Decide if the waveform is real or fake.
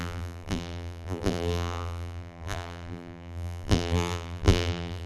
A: fake